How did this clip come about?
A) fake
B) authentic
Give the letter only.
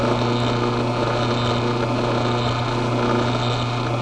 B